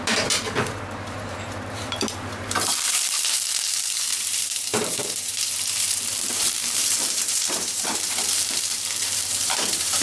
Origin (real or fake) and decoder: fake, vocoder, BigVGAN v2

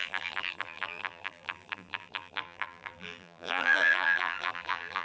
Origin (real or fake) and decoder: fake, vocoder, BigVGAN v2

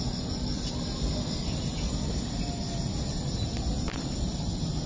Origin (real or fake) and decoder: real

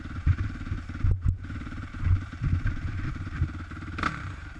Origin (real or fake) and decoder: fake, vocoder, BigVGAN v2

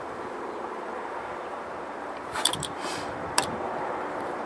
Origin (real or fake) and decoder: fake, vocoder, BigVGAN v2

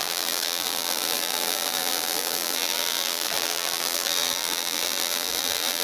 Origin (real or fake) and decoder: fake, vocoder, BigVGAN v2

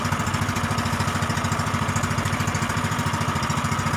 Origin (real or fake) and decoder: fake, vocoder, BigVGAN v2